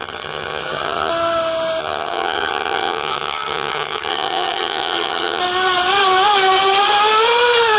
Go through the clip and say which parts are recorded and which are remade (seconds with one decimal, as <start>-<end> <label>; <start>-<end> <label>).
0.0-1.1 remade; 1.1-1.8 recorded; 1.8-5.4 remade; 5.4-7.8 recorded